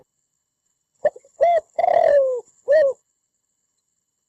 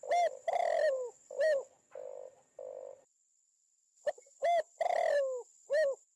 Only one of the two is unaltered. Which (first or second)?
second